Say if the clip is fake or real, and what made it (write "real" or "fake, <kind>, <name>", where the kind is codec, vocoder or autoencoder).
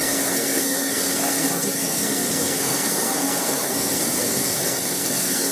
fake, codec, SNAC